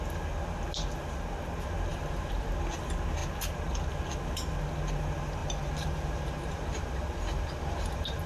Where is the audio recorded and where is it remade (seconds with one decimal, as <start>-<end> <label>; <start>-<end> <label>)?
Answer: 0.0-1.9 recorded; 1.9-2.5 remade; 2.5-5.4 recorded; 5.4-8.3 remade